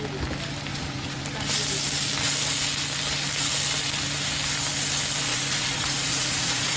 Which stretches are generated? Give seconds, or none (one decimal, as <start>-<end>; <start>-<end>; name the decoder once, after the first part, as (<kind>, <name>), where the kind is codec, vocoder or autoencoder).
0.7-1.2 (vocoder, Vocos); 5.3-6.8